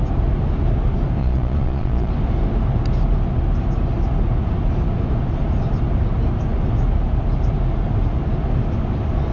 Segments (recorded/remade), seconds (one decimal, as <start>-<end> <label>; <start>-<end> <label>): 0.0-1.2 recorded; 1.2-2.1 remade; 2.1-9.3 recorded

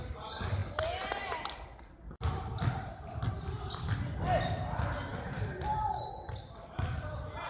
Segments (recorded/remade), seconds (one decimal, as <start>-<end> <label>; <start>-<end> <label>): 0.0-5.1 recorded; 5.1-5.9 remade; 5.9-7.5 recorded

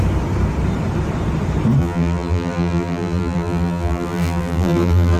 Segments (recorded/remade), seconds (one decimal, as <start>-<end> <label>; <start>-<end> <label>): 0.0-1.8 recorded; 1.8-5.2 remade

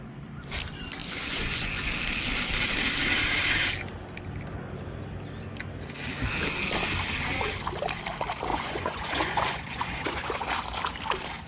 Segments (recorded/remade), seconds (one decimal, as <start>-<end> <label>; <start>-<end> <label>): 0.0-1.0 recorded; 1.0-1.7 remade; 1.7-8.5 recorded; 8.5-10.3 remade; 10.3-11.5 recorded

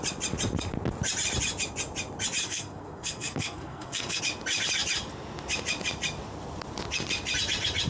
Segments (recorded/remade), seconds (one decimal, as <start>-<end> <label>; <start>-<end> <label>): 0.0-2.4 recorded; 2.4-4.2 remade; 4.2-7.9 recorded